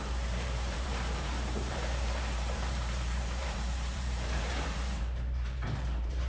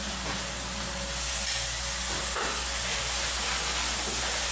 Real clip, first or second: second